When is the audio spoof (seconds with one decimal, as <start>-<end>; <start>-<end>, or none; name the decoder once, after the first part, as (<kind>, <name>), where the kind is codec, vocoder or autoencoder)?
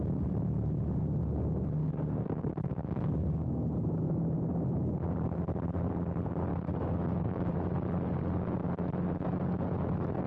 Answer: 1.8-4.2 (codec, DAC); 6.5-7.5